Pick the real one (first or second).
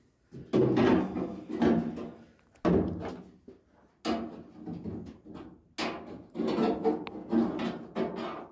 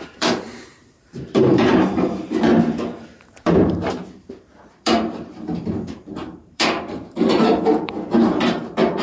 first